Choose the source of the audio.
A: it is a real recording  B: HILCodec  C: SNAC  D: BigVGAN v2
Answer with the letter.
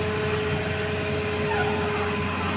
A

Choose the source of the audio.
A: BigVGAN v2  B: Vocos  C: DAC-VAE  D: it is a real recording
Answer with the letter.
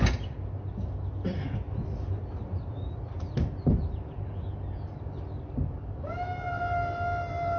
D